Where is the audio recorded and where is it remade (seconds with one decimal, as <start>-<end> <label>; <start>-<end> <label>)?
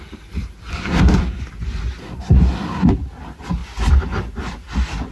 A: 0.0-0.7 recorded; 0.7-1.4 remade; 1.4-2.0 recorded; 2.0-2.9 remade; 2.9-5.1 recorded